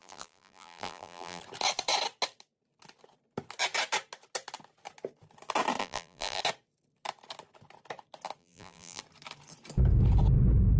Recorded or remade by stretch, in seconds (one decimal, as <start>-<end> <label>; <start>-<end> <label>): 0.0-1.4 remade; 1.4-5.8 recorded; 5.8-6.4 remade; 6.4-8.4 recorded; 8.4-9.0 remade; 9.0-10.8 recorded